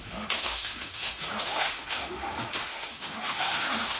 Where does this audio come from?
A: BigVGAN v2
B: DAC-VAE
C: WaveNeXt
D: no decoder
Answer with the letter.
B